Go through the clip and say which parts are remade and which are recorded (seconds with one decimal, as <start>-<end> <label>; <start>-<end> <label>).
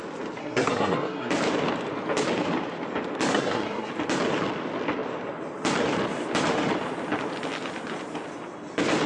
0.0-0.4 recorded; 0.4-1.3 remade; 1.3-3.3 recorded; 3.3-3.9 remade; 3.9-9.1 recorded